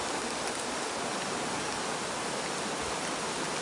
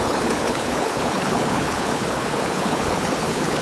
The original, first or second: first